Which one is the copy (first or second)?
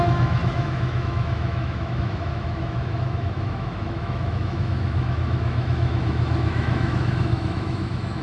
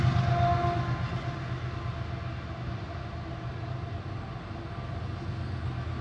first